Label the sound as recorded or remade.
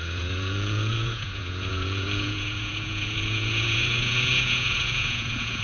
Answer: remade